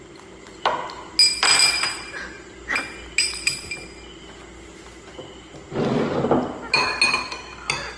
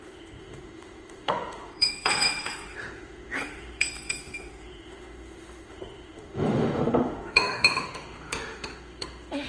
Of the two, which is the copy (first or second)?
second